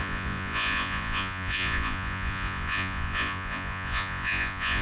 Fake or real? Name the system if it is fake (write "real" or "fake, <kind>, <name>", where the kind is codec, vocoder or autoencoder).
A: fake, vocoder, Vocos